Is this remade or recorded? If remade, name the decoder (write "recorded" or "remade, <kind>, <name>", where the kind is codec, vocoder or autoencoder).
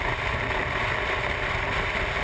recorded